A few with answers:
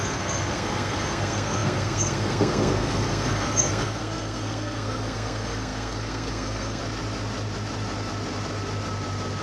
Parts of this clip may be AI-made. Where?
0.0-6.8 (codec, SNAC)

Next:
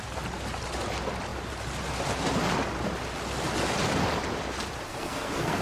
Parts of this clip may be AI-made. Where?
4.9-5.6 (codec, SNAC)

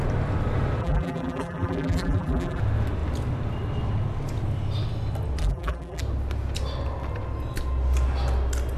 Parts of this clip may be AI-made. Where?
0.8-2.6 (vocoder, BigVGAN v2); 5.4-6.0

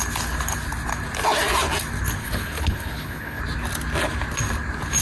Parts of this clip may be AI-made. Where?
2.2-3.4 (codec, HILCodec)